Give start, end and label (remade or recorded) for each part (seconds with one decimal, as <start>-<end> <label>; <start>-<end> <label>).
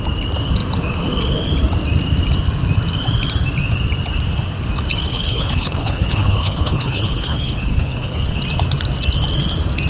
0.0-5.1 recorded; 5.1-8.4 remade; 8.4-9.9 recorded